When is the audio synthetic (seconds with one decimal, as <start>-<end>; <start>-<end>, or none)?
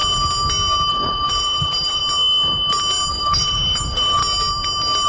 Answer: 0.9-2.0; 3.1-4.2